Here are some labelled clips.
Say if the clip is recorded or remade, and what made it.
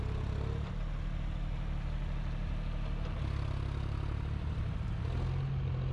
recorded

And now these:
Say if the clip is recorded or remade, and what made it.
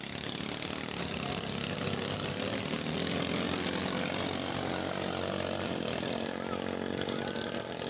recorded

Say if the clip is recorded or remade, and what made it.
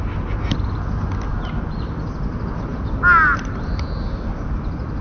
recorded